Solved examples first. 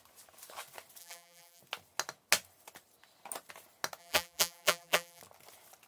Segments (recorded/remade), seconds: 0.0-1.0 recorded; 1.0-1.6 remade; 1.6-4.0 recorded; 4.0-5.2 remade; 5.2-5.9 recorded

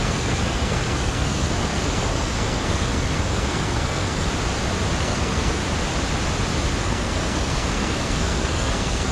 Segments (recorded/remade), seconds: 0.0-4.3 remade; 4.3-5.0 recorded; 5.0-5.6 remade; 5.6-6.8 recorded; 6.8-9.1 remade

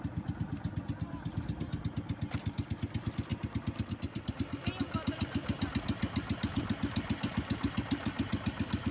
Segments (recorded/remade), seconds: 0.0-8.9 recorded

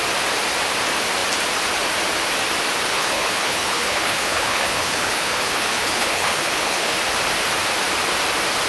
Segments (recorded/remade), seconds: 0.0-2.9 recorded; 2.9-7.0 remade; 7.0-8.7 recorded

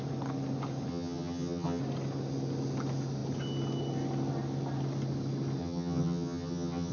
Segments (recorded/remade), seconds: 0.0-0.9 recorded; 0.9-1.8 remade; 1.8-5.6 recorded; 5.6-6.9 remade

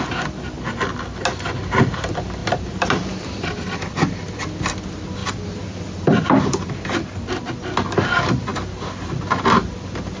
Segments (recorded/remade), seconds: 0.0-2.4 recorded; 2.4-4.5 remade; 4.5-5.2 recorded; 5.2-6.7 remade; 6.7-10.2 recorded

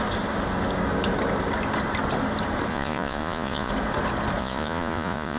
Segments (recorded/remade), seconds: 0.0-2.7 recorded; 2.7-3.7 remade; 3.7-4.4 recorded; 4.4-5.4 remade